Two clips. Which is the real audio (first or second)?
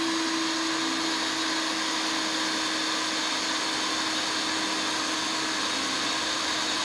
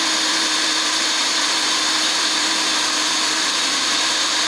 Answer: first